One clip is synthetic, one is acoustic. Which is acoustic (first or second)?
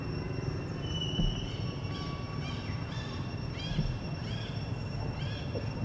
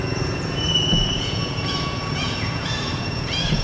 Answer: first